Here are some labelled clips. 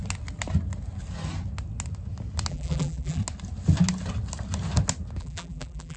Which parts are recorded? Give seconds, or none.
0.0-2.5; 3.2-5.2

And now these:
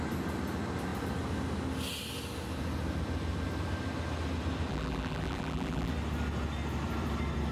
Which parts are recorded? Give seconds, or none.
0.0-4.7; 5.9-7.5

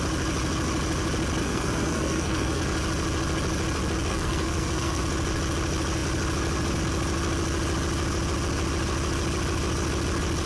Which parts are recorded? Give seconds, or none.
0.0-1.4; 2.6-4.1; 5.0-10.5

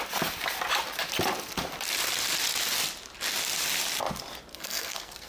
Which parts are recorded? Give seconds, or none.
0.0-4.5